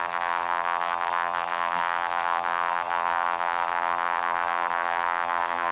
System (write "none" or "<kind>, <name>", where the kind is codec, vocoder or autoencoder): vocoder, BigVGAN v2